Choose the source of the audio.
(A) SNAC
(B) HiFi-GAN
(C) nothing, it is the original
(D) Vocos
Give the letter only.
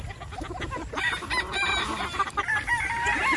C